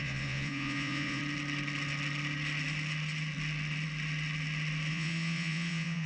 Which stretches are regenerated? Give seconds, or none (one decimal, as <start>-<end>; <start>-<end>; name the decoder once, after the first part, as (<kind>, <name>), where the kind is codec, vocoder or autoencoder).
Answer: 0.0-1.2 (vocoder, Vocos); 4.9-6.1